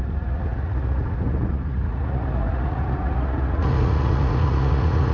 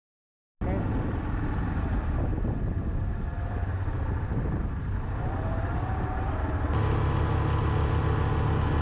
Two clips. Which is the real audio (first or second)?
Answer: second